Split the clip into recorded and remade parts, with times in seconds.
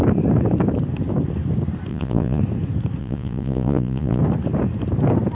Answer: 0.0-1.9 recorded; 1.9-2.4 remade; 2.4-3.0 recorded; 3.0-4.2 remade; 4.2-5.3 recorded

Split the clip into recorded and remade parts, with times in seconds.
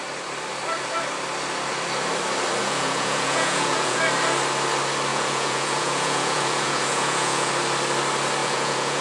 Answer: 0.0-2.6 recorded; 2.6-4.0 remade; 4.0-5.1 recorded; 5.1-7.5 remade; 7.5-8.4 recorded; 8.4-9.0 remade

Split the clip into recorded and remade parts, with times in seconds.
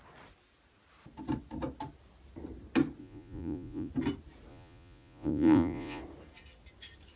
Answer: 0.0-3.0 recorded; 3.0-3.9 remade; 3.9-4.5 recorded; 4.5-6.0 remade; 6.0-7.2 recorded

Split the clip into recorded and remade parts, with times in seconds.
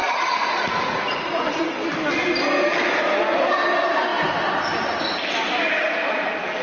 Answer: 0.0-1.7 remade; 1.7-6.6 recorded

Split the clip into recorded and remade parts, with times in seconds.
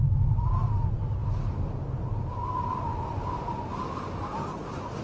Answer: 0.0-5.0 recorded